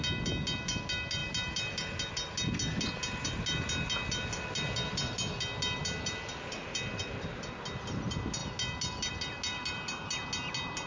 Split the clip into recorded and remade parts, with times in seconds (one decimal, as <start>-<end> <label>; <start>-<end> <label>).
0.0-10.9 recorded